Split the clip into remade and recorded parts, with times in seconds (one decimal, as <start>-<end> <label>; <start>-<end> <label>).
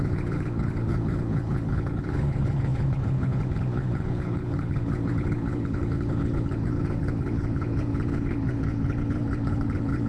0.0-10.1 remade